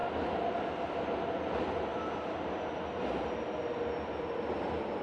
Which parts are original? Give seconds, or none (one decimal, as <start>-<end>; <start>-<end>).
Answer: 0.0-5.0